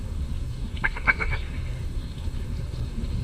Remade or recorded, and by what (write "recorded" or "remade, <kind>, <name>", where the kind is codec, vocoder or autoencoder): remade, codec, SNAC